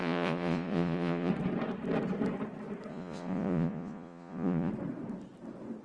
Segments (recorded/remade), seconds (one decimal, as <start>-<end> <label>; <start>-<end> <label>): 0.0-1.3 remade; 1.3-2.9 recorded; 2.9-4.7 remade; 4.7-5.8 recorded